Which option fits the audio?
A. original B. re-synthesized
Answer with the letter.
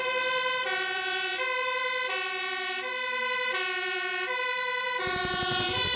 B